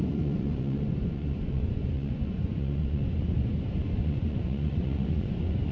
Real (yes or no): no